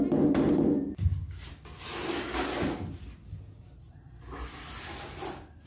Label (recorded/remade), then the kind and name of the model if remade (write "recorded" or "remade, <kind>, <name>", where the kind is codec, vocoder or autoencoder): recorded